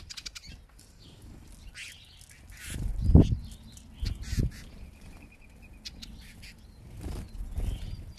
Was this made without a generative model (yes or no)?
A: yes